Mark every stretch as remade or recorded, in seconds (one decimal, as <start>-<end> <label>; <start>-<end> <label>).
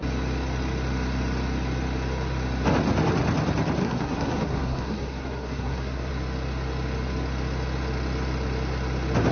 0.0-3.8 recorded; 3.8-6.1 remade; 6.1-9.3 recorded